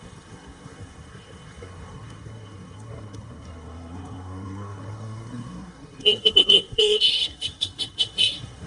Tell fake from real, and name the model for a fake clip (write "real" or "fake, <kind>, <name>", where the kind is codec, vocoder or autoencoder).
fake, codec, SNAC